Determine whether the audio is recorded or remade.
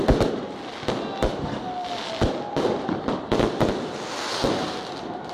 recorded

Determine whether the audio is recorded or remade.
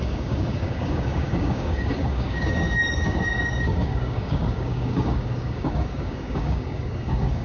remade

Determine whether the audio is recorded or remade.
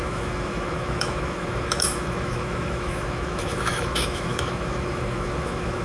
remade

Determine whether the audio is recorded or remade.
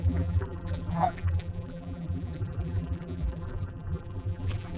remade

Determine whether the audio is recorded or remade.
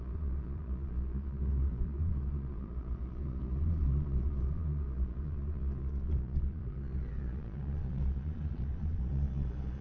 remade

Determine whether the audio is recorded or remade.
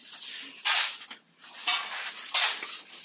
recorded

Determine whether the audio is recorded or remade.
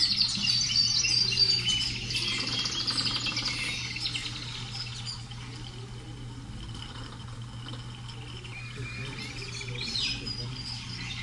recorded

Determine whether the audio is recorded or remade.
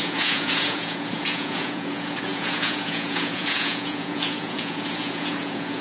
remade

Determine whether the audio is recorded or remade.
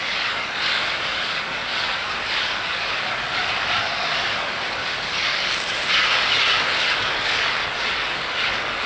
remade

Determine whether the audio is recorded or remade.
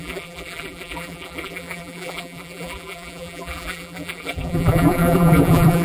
remade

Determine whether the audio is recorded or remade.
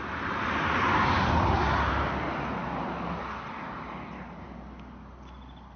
recorded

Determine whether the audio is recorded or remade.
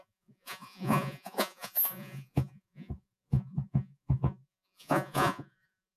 remade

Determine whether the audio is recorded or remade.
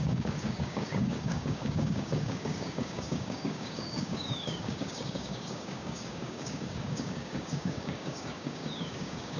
remade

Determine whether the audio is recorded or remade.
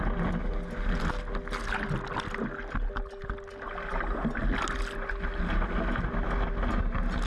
recorded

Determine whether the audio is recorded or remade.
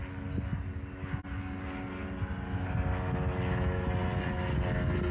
recorded